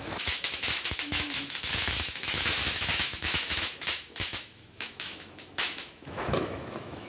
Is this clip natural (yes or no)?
no